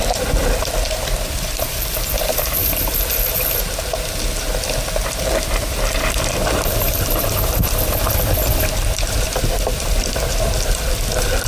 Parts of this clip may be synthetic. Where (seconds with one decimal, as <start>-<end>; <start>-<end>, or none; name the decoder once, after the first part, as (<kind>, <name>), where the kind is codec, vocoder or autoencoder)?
0.0-2.6 (vocoder, BigVGAN v2); 5.2-11.5